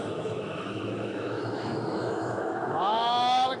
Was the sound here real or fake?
fake